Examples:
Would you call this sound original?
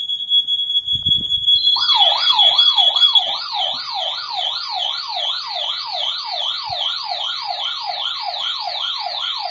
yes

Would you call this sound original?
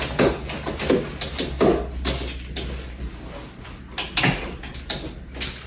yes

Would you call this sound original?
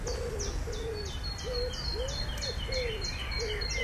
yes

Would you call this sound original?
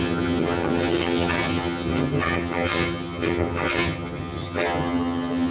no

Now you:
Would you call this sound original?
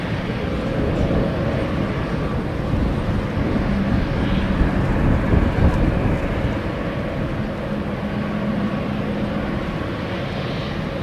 yes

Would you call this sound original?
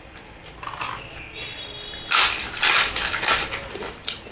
yes